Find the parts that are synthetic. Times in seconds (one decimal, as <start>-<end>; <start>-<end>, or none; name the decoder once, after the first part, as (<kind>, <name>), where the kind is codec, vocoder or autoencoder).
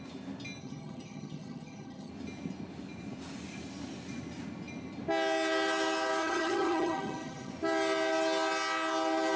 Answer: 0.6-2.1 (vocoder, HiFi-GAN); 6.2-7.5